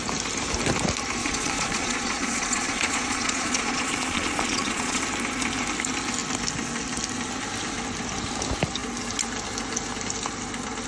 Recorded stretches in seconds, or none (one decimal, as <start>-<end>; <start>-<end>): 0.0-1.2; 5.0-10.9